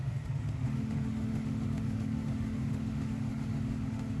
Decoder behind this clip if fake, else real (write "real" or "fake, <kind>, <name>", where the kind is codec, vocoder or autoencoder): fake, autoencoder, DAC-VAE